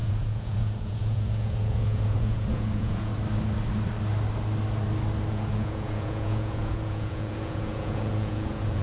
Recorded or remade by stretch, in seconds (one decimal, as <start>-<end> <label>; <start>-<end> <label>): 0.0-3.1 remade; 3.1-5.3 recorded; 5.3-8.8 remade